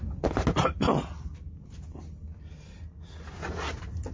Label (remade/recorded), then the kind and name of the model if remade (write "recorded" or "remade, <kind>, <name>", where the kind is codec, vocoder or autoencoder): recorded